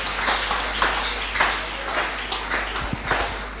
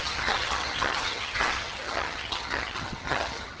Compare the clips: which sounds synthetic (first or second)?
second